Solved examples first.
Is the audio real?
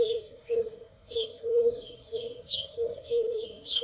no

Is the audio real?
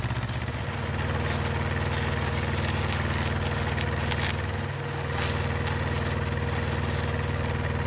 yes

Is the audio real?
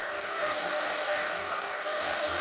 no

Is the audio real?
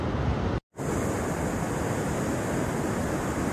yes